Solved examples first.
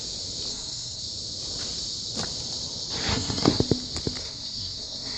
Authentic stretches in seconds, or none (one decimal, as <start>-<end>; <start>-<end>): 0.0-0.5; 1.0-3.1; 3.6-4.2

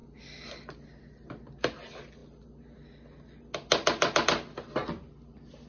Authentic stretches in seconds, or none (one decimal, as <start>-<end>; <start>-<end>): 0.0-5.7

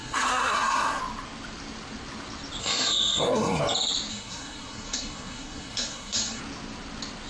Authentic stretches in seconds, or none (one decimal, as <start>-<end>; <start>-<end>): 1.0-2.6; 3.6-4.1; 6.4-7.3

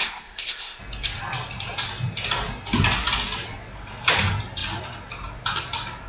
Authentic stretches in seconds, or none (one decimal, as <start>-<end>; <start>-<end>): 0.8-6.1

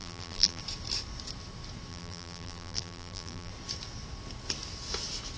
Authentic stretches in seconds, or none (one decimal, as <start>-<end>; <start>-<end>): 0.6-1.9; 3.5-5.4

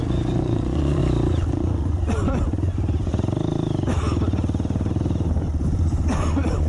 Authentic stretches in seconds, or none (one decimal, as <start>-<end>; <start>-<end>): 1.0-1.5; 3.1-5.7

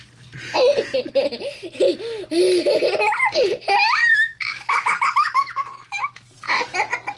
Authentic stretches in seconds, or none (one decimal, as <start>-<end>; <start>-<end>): 0.0-4.0; 6.6-7.2

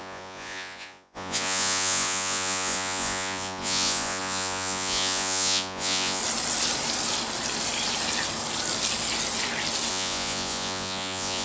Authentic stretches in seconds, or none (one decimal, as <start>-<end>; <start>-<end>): 6.2-9.9